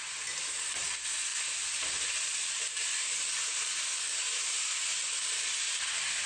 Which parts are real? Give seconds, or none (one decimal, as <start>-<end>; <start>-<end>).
0.0-6.3